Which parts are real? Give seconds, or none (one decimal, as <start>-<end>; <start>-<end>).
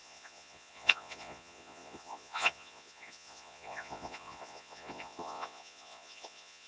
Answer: none